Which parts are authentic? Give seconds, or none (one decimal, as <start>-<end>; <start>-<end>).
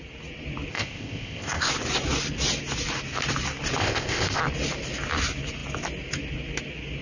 0.0-0.7; 1.7-3.8; 4.4-7.0